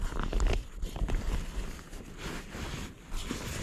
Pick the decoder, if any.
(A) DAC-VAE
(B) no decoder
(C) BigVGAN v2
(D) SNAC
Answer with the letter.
B